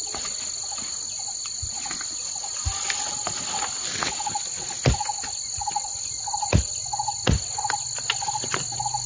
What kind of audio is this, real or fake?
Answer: real